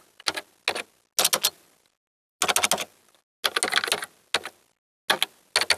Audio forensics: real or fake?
real